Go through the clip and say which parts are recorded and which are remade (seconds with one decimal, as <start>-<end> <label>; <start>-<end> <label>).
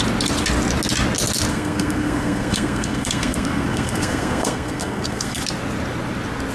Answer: 0.0-1.5 recorded; 1.5-5.4 remade; 5.4-6.5 recorded